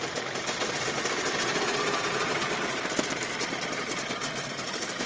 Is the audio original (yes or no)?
no